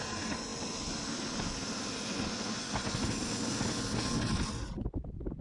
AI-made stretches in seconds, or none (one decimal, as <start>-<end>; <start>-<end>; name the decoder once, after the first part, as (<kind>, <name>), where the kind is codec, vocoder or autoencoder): none